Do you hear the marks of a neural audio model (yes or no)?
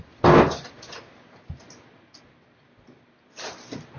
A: no